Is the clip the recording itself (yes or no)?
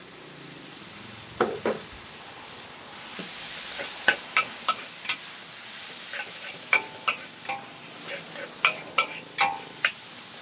yes